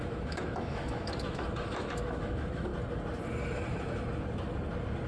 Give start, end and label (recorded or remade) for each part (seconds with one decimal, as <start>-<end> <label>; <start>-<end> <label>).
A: 0.0-2.7 remade; 2.7-5.1 recorded